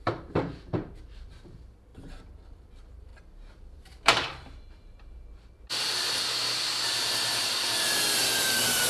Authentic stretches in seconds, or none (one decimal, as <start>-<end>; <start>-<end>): 1.9-2.5